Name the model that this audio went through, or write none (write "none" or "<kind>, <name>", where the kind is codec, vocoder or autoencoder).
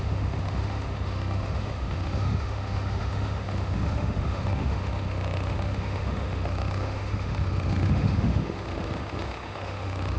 autoencoder, DAC-VAE